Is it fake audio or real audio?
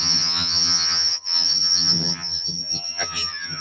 fake